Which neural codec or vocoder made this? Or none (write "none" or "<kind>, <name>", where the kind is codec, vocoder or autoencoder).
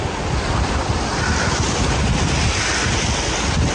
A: none